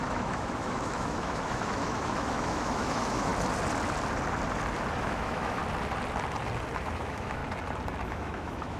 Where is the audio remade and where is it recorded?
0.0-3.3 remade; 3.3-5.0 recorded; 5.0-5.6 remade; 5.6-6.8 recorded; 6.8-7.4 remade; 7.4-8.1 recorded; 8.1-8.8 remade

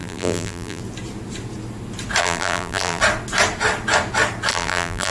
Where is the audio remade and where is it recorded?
0.0-0.8 remade; 0.8-2.2 recorded; 2.2-3.0 remade; 3.0-4.5 recorded; 4.5-5.1 remade

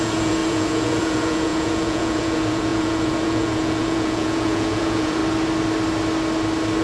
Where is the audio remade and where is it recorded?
0.0-5.2 remade; 5.2-6.8 recorded

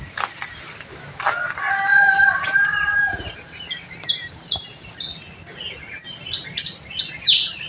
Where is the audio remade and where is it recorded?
0.0-1.9 recorded; 1.9-4.9 remade; 4.9-7.0 recorded; 7.0-7.7 remade